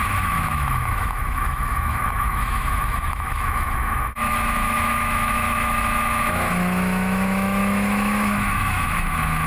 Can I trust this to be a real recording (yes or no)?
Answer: no